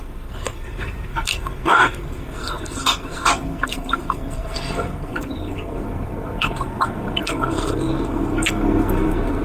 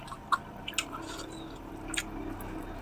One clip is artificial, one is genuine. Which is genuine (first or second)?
second